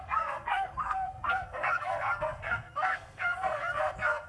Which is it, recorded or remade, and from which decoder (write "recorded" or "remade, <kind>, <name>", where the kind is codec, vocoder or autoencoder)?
remade, codec, SNAC